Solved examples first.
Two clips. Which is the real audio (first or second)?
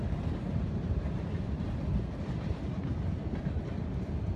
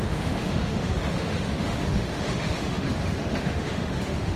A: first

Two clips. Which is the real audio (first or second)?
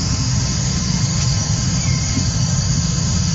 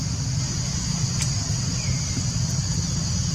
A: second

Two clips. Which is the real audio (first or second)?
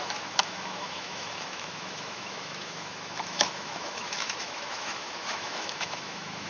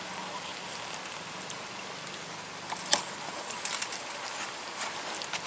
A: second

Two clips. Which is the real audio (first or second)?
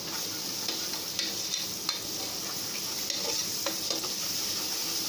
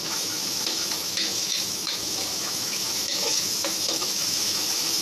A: first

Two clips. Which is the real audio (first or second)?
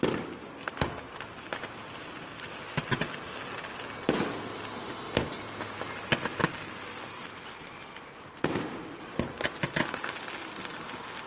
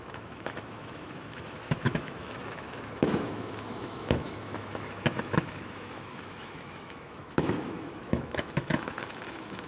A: first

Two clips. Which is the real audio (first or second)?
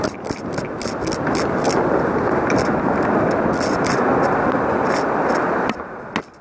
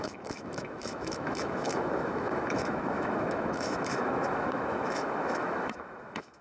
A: first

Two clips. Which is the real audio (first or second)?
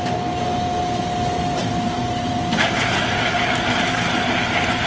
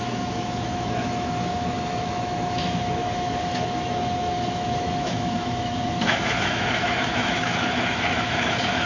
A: first